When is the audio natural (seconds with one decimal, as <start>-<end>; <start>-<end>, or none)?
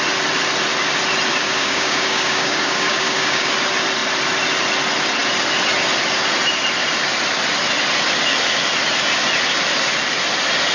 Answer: 0.0-1.4; 3.5-10.7